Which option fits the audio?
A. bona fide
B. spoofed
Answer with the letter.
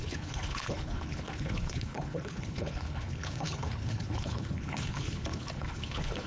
B